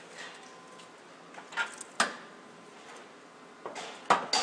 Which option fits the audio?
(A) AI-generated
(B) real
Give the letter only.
B